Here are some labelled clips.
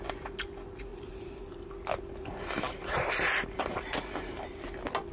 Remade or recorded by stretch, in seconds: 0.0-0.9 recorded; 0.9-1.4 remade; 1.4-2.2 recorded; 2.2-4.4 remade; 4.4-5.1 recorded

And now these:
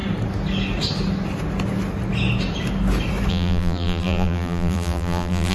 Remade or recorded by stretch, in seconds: 0.0-3.3 recorded; 3.3-5.5 remade

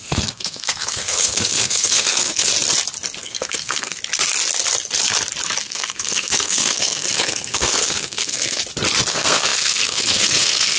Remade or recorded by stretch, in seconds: 0.0-2.5 remade; 2.5-3.2 recorded; 3.2-4.0 remade; 4.0-5.6 recorded; 5.6-8.6 remade; 8.6-9.1 recorded; 9.1-10.8 remade

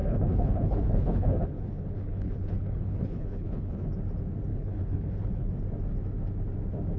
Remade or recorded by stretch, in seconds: 0.0-3.9 remade; 3.9-4.5 recorded; 4.5-5.5 remade; 5.5-7.0 recorded

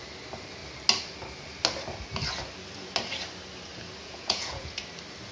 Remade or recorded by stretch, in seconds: 0.0-4.0 recorded; 4.0-4.7 remade; 4.7-5.3 recorded

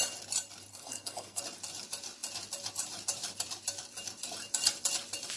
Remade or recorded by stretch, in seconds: 0.0-0.7 recorded; 0.7-1.4 remade; 1.4-5.4 recorded